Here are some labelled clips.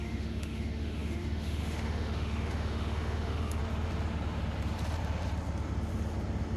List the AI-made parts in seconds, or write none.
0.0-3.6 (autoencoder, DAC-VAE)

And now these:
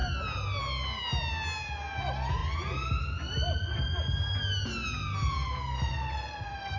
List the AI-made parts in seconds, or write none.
none

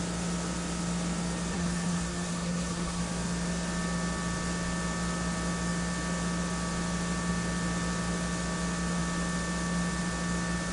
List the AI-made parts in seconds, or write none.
1.5-3.0 (codec, SNAC)